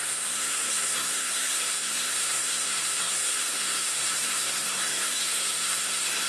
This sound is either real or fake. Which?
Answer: fake